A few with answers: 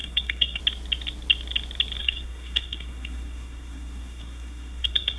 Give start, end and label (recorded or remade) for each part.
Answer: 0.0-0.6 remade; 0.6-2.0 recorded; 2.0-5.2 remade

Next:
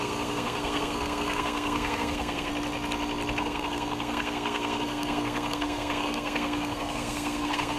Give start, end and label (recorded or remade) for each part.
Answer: 0.0-2.5 remade; 2.5-3.4 recorded; 3.4-7.8 remade

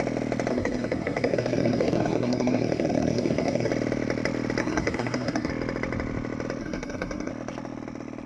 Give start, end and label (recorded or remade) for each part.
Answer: 0.0-0.5 recorded; 0.5-3.7 remade; 3.7-4.6 recorded; 4.6-5.5 remade; 5.5-6.6 recorded; 6.6-7.3 remade; 7.3-8.3 recorded

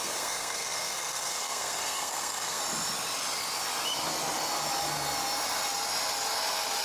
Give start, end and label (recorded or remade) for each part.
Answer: 0.0-2.6 remade; 2.6-6.8 recorded

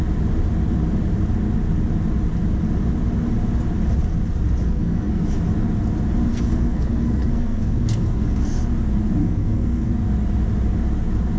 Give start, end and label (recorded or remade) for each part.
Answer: 0.0-4.6 recorded; 4.6-5.2 remade; 5.2-6.3 recorded; 6.3-8.6 remade; 8.6-9.2 recorded; 9.2-9.9 remade; 9.9-11.4 recorded

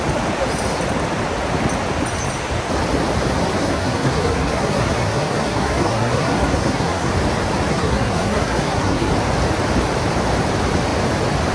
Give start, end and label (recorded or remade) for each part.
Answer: 0.0-3.6 recorded; 3.6-7.1 remade; 7.1-7.7 recorded; 7.7-9.1 remade; 9.1-11.5 recorded

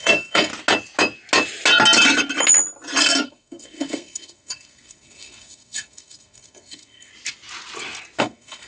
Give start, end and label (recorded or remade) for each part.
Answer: 0.0-0.5 remade; 0.5-3.0 recorded; 3.0-7.1 remade; 7.1-8.2 recorded; 8.2-8.7 remade